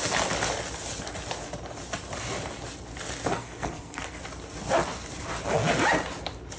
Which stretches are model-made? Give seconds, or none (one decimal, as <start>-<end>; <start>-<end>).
3.3-4.2